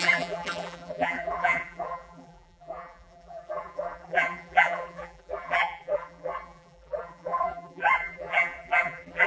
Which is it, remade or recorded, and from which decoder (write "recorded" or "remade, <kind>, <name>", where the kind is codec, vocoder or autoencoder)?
remade, vocoder, BigVGAN v2